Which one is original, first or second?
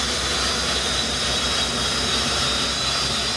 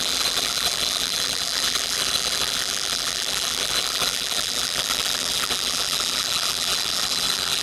first